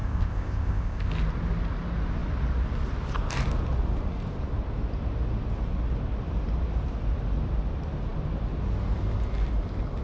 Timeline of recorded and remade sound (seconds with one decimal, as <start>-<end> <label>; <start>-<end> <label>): 0.0-1.1 remade; 1.1-10.0 recorded